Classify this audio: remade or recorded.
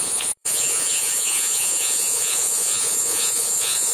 remade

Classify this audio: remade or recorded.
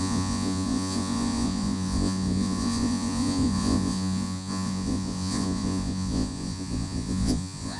remade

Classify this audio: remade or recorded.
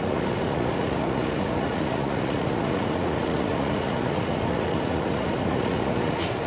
remade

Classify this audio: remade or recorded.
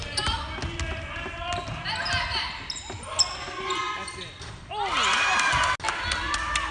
recorded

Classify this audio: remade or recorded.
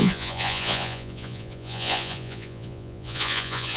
remade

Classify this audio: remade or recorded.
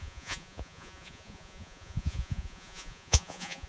remade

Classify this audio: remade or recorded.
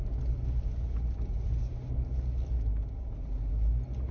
recorded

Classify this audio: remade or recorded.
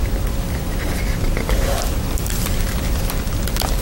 recorded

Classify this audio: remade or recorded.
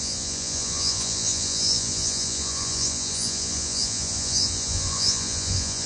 remade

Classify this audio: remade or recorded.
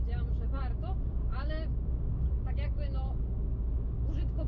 recorded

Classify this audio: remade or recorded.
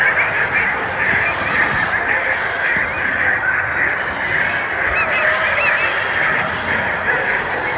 recorded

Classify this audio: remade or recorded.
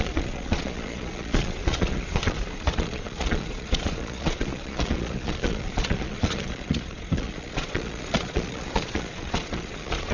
remade